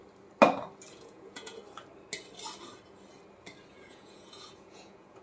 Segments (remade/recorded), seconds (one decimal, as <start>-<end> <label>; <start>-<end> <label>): 0.0-0.9 recorded; 0.9-1.6 remade; 1.6-3.7 recorded; 3.7-5.2 remade